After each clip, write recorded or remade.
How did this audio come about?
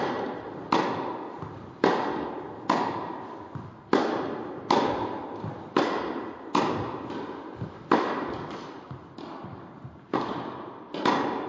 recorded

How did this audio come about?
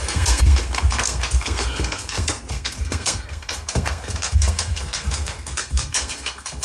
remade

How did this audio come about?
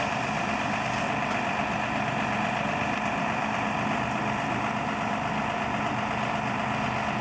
recorded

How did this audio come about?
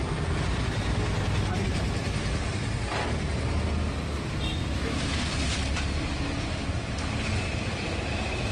recorded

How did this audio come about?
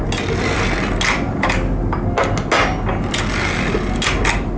recorded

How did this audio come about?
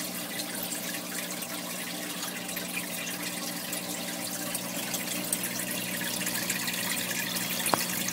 recorded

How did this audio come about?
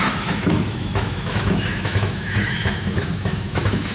remade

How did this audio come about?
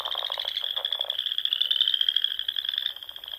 recorded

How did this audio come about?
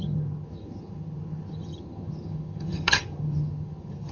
remade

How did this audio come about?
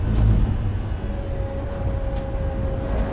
recorded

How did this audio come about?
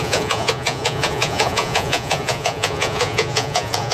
remade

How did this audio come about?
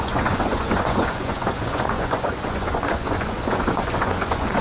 remade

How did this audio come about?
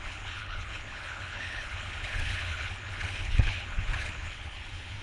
remade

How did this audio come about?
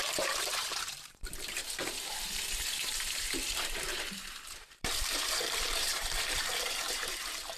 remade